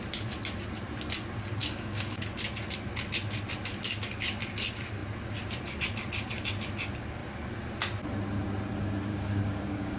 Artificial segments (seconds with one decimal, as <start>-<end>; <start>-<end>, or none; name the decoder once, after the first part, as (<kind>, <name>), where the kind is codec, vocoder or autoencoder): 1.6-2.2 (codec, DAC); 9.1-10.0